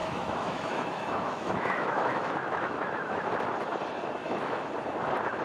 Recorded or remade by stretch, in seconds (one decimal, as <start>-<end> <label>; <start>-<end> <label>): 0.0-3.2 remade; 3.2-4.2 recorded; 4.2-4.7 remade; 4.7-5.4 recorded